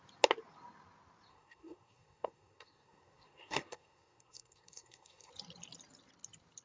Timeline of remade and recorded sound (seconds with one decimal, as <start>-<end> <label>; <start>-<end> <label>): 0.0-1.3 recorded; 1.3-5.3 remade; 5.3-6.6 recorded